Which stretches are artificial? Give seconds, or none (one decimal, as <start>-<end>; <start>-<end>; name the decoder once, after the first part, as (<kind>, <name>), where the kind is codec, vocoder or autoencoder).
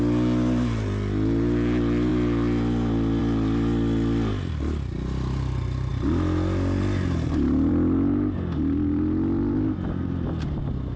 none